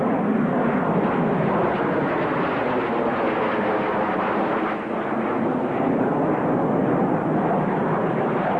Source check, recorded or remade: recorded